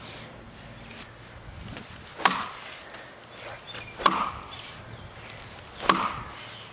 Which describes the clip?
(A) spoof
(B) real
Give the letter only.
B